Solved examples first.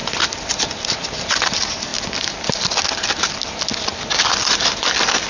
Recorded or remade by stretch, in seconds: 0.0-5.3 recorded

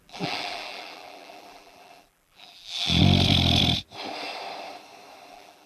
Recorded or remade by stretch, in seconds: 0.0-3.0 remade; 3.0-5.3 recorded; 5.3-5.7 remade

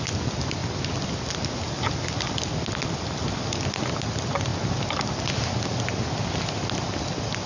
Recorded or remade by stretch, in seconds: 0.0-7.5 recorded